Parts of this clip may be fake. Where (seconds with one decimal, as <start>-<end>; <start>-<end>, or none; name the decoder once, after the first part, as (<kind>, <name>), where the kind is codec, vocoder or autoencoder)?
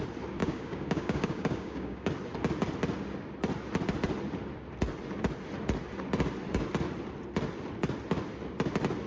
0.4-2.1 (codec, DAC)